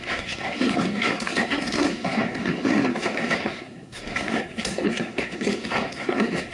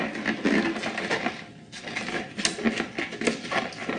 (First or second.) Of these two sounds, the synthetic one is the first